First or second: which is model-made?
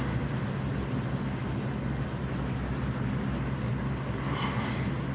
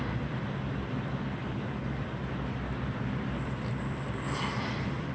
second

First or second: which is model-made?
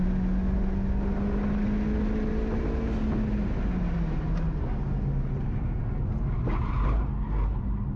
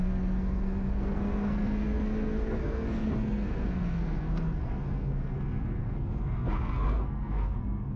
second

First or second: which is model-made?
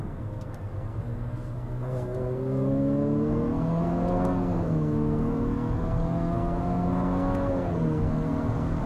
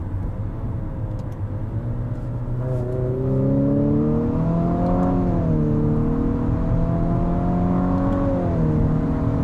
first